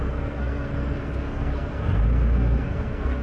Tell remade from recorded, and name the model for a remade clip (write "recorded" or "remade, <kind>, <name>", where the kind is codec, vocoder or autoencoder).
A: remade, codec, SNAC